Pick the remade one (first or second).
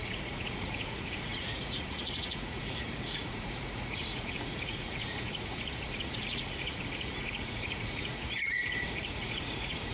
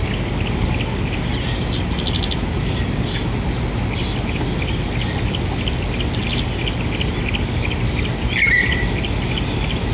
first